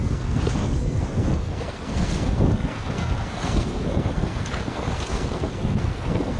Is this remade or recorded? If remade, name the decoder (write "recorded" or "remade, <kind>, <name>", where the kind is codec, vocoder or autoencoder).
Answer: remade, codec, SNAC